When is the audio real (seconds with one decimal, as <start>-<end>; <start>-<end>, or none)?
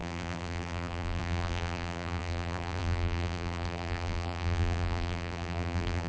none